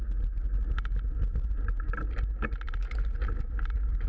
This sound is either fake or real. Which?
real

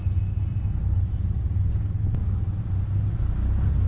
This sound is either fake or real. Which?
real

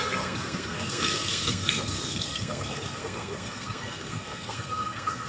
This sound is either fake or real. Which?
fake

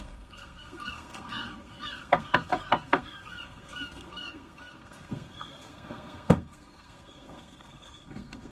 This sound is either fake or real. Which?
fake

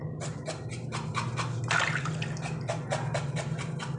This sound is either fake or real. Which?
real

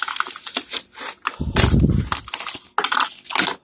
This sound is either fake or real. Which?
real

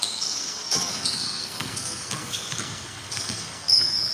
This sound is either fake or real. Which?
fake